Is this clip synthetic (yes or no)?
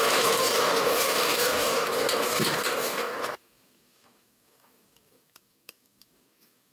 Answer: yes